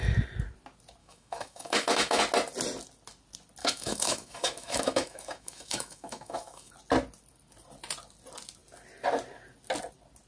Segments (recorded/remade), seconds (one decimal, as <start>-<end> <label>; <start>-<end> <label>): 0.0-1.0 recorded; 1.0-2.2 remade; 2.2-3.6 recorded; 3.6-6.7 remade; 6.7-10.3 recorded